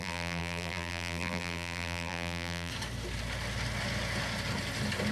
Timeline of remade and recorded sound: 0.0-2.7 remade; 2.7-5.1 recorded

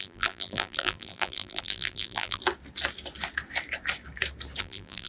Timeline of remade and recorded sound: 0.0-2.4 remade; 2.4-4.6 recorded; 4.6-5.1 remade

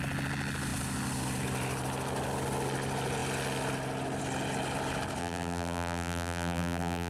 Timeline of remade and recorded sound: 0.0-5.2 recorded; 5.2-7.1 remade

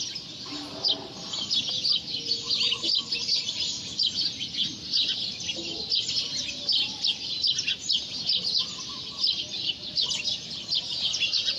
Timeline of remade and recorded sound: 0.0-5.0 recorded; 5.0-5.9 remade; 5.9-11.6 recorded

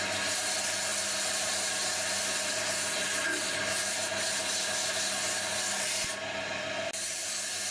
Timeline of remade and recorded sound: 0.0-7.7 recorded

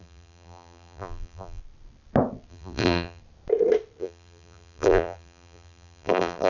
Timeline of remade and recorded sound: 0.0-1.6 remade; 1.6-2.5 recorded; 2.5-3.2 remade; 3.2-4.0 recorded; 4.0-6.5 remade

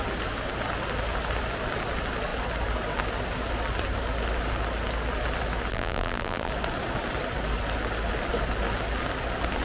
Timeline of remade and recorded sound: 0.0-5.7 recorded; 5.7-6.5 remade; 6.5-9.6 recorded